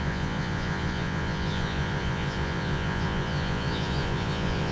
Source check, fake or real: fake